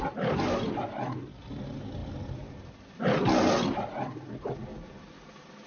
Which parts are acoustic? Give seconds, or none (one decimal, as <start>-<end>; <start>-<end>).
0.0-5.7